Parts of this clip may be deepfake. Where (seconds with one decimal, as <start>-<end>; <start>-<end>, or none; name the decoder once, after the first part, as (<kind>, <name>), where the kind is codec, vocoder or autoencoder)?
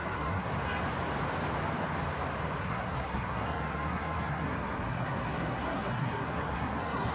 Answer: 0.0-0.5 (codec, SNAC); 2.6-7.1